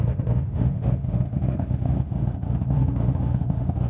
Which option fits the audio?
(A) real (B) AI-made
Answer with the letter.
B